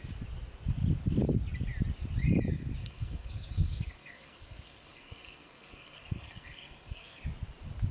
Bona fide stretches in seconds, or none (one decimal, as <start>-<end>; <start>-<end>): 0.0-2.8; 7.2-7.9